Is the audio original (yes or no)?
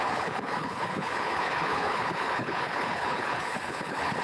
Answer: no